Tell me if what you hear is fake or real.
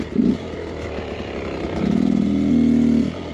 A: real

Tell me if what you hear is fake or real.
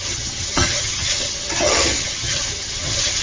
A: fake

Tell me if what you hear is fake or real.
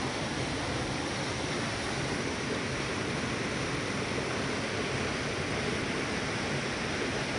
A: real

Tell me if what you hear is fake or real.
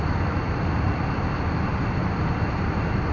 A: fake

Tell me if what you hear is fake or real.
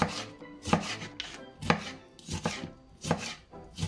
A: real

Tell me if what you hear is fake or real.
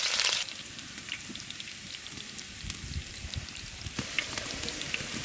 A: fake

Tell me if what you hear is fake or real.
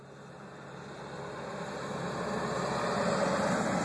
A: real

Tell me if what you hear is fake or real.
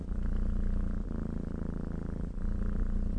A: real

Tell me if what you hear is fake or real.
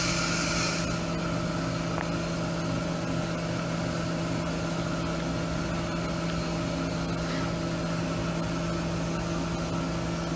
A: real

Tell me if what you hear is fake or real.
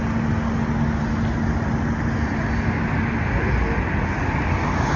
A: real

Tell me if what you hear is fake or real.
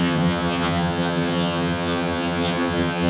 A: fake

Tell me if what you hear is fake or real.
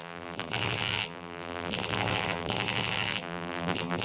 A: fake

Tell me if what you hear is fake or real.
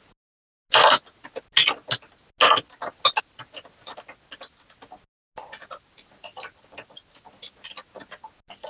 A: real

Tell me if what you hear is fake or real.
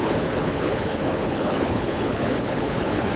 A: fake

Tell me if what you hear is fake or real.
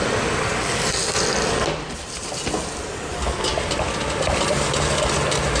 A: real